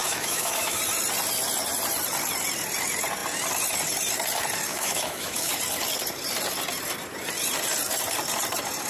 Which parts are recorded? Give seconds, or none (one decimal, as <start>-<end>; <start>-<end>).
0.8-4.7; 5.6-8.9